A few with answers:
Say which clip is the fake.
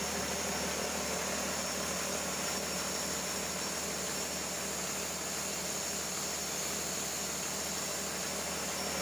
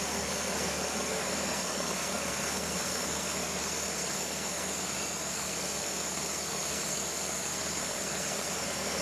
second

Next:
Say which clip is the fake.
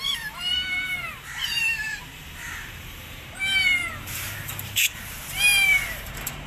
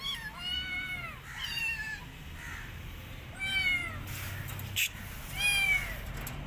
first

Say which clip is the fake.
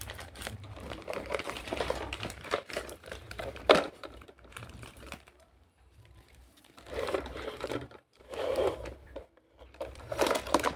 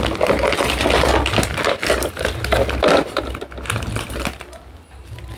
first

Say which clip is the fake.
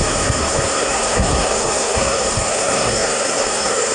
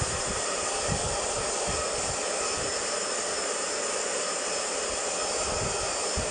first